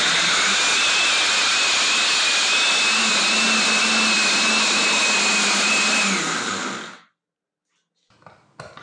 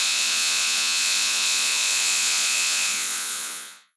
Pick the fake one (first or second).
second